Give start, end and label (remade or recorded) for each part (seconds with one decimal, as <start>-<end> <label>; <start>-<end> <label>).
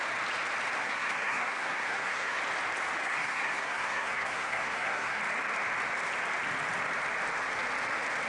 0.0-0.8 recorded; 0.8-2.4 remade; 2.4-3.0 recorded; 3.0-5.2 remade; 5.2-8.3 recorded